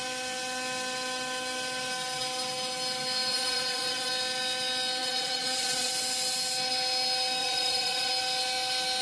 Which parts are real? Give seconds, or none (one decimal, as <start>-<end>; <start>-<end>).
0.0-3.3; 4.1-5.0; 5.9-7.4; 8.1-9.0